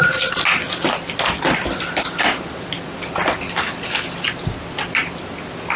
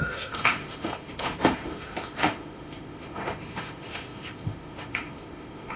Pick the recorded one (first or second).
first